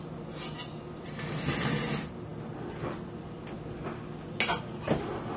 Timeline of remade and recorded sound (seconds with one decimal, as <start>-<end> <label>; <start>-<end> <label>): 0.0-5.4 recorded